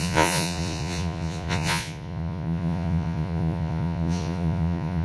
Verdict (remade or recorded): remade